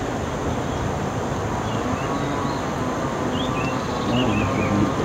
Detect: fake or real real